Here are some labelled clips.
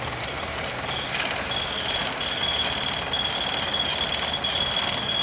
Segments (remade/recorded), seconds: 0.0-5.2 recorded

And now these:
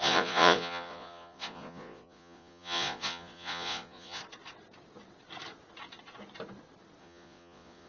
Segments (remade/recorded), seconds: 0.0-4.2 remade; 4.2-7.0 recorded; 7.0-7.9 remade

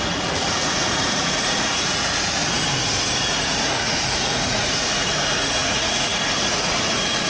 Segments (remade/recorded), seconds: 0.0-2.4 remade; 2.4-3.7 recorded; 3.7-7.3 remade

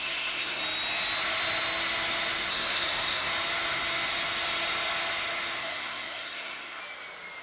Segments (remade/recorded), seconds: 0.0-0.6 remade; 0.6-2.5 recorded; 2.5-3.3 remade; 3.3-5.6 recorded; 5.6-6.8 remade; 6.8-7.4 recorded

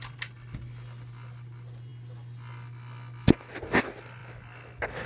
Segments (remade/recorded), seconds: 0.0-5.1 recorded